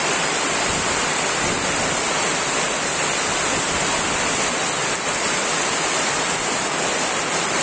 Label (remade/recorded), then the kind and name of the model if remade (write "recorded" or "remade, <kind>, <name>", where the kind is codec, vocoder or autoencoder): remade, vocoder, BigVGAN v2